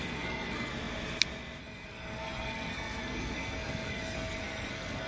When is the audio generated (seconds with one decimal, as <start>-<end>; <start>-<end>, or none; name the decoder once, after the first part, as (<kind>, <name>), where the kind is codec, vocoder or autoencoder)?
0.0-0.7 (codec, SNAC); 1.6-5.1